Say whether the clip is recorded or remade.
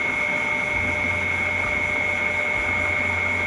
recorded